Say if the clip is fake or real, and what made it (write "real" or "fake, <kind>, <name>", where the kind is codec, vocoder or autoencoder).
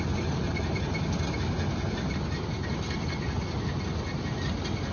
real